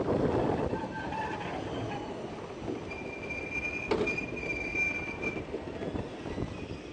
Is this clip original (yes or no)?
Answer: yes